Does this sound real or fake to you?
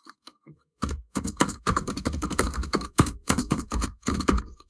fake